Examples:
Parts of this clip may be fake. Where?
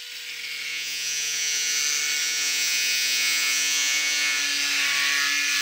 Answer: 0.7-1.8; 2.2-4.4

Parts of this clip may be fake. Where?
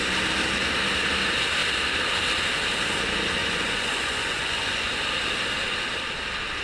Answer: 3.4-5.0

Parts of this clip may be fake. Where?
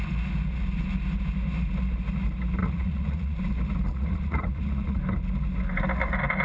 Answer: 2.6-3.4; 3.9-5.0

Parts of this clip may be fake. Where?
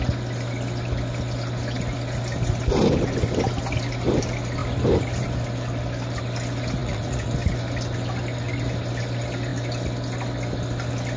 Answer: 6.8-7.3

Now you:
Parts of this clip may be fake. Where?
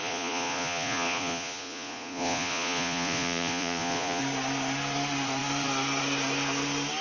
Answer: 0.0-4.2